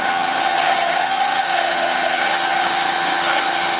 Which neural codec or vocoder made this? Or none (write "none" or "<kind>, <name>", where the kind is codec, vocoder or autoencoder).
vocoder, HiFi-GAN